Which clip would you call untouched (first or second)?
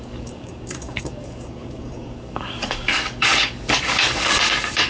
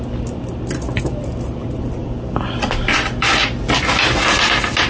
second